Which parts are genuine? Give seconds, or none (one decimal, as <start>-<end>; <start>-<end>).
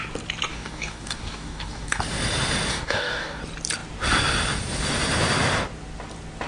0.0-0.5; 2.0-2.7; 3.4-6.5